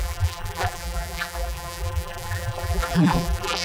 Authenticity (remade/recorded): remade